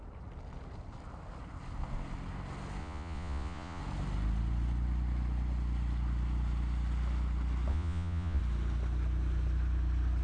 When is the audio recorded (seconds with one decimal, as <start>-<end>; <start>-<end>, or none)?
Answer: 0.0-2.8; 3.8-7.7; 8.4-10.2